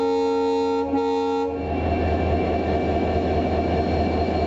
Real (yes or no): yes